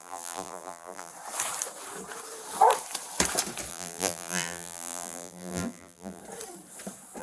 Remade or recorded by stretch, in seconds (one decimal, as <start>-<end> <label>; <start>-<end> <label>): 0.0-1.1 remade; 1.1-3.7 recorded; 3.7-6.2 remade; 6.2-7.2 recorded